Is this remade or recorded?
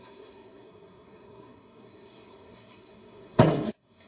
remade